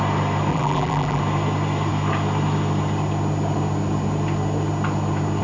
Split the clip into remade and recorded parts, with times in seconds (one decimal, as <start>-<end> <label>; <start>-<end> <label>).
0.0-0.5 recorded; 0.5-1.2 remade; 1.2-5.4 recorded